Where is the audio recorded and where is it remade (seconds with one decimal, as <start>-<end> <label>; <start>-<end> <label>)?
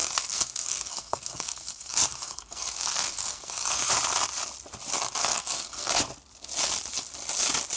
0.0-3.9 remade; 3.9-5.2 recorded; 5.2-5.9 remade; 5.9-7.8 recorded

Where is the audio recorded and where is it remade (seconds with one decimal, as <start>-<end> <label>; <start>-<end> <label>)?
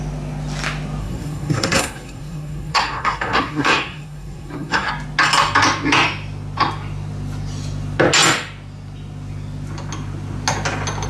0.0-1.0 recorded; 1.0-4.9 remade; 4.9-11.1 recorded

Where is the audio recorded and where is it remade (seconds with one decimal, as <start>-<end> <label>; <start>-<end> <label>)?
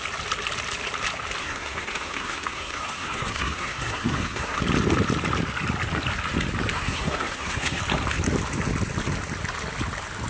0.0-1.4 recorded; 1.4-4.6 remade; 4.6-6.7 recorded; 6.7-7.8 remade; 7.8-10.3 recorded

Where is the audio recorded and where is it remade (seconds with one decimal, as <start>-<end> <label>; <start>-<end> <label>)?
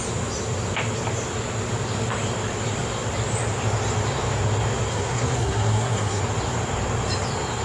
0.0-4.9 recorded; 4.9-6.2 remade; 6.2-7.6 recorded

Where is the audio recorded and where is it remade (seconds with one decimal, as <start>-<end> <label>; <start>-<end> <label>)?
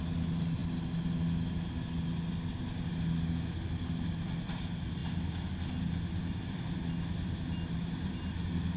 0.0-8.8 recorded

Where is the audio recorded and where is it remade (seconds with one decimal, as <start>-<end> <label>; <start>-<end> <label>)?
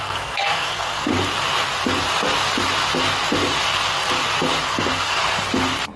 0.0-1.1 remade; 1.1-4.7 recorded; 4.7-5.2 remade; 5.2-6.0 recorded